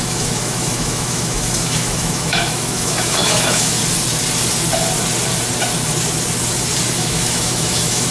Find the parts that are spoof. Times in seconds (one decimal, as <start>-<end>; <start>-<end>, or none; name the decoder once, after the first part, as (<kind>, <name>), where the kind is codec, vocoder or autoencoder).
0.0-3.8 (autoencoder, DAC-VAE); 6.9-8.1

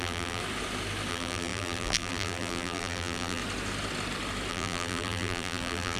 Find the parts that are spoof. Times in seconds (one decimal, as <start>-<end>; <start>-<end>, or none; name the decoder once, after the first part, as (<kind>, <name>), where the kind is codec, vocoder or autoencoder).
0.0-0.4 (vocoder, BigVGAN v2); 1.1-3.4; 4.5-6.0

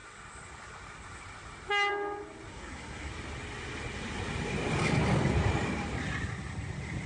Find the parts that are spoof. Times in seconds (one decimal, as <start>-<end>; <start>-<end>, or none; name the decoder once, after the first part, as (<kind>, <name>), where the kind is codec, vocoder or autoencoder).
2.5-3.1 (codec, SNAC)

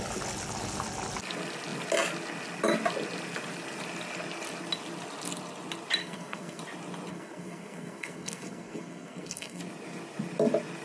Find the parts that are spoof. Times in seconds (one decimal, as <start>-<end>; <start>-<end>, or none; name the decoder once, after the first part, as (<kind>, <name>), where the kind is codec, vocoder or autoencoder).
6.0-6.6 (codec, SNAC); 7.1-9.6

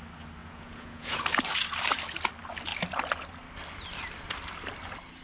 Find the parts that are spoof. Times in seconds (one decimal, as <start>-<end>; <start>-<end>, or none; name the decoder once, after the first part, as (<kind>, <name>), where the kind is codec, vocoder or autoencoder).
0.4-1.2 (vocoder, Vocos)